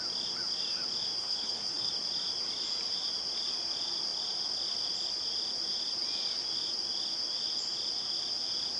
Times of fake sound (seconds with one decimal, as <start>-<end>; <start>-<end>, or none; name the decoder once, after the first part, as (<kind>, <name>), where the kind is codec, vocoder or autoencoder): 1.2-1.9 (codec, HILCodec)